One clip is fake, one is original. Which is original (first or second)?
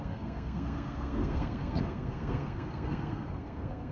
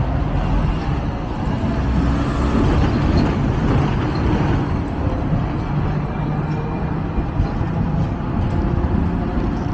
second